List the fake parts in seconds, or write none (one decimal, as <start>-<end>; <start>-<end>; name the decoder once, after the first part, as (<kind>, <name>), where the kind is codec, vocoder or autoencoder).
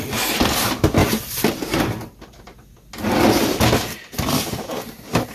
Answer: none